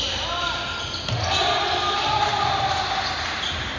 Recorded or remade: recorded